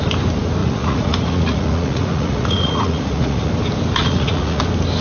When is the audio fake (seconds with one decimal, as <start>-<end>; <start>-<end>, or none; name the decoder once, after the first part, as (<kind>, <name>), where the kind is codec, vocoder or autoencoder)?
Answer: 0.6-3.5 (vocoder, Vocos); 4.0-4.6